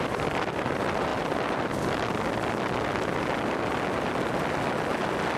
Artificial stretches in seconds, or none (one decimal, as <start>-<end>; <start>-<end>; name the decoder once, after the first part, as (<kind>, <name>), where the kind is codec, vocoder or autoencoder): none